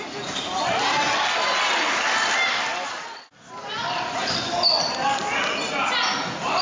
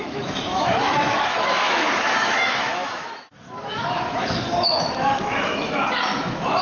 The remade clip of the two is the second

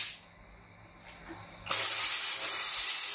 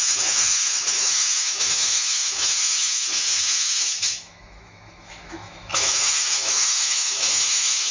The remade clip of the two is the second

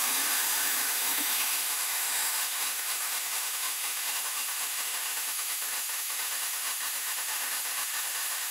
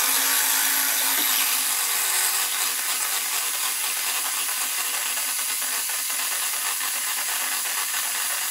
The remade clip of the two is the first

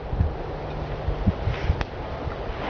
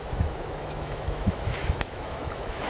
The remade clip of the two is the second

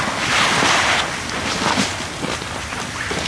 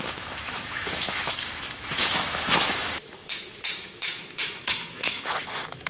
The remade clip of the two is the second